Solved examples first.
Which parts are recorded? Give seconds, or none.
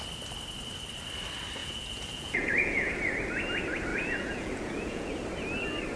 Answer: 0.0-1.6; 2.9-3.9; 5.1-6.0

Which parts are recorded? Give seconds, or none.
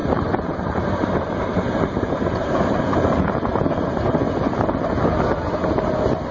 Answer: 3.8-6.3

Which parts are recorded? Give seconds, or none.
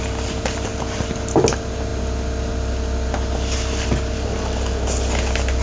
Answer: 0.0-5.6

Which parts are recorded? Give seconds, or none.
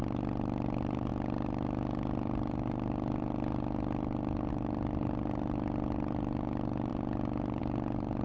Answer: 0.0-8.2